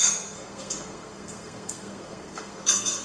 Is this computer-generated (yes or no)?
yes